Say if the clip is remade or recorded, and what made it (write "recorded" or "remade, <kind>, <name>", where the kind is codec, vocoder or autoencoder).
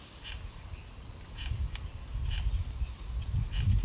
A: recorded